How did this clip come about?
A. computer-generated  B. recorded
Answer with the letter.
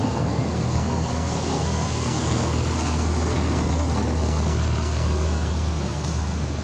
A